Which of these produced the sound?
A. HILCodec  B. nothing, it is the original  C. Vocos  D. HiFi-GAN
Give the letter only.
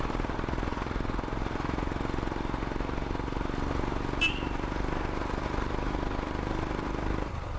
B